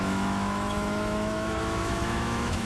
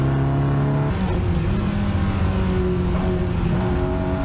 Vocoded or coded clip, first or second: first